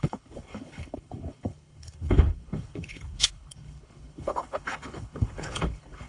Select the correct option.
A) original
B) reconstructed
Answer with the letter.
B